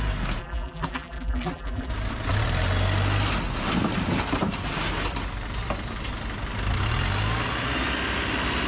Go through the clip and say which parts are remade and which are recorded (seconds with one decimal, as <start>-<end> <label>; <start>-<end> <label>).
0.0-0.4 recorded; 0.4-1.9 remade; 1.9-8.7 recorded